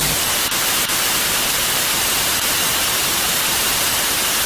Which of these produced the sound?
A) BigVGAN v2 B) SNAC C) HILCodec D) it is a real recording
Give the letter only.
D